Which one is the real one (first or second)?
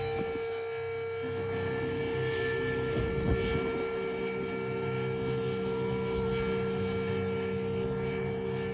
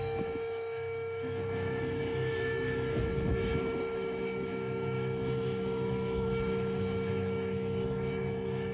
first